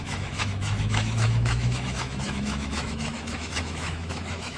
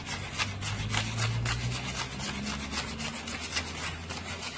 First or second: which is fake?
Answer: first